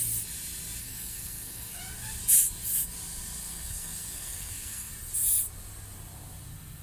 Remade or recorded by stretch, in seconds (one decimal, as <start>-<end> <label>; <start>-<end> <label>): 0.0-0.8 recorded; 0.8-1.8 remade; 1.8-3.4 recorded; 3.4-4.9 remade; 4.9-6.8 recorded